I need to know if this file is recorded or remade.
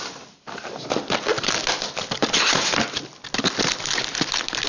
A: recorded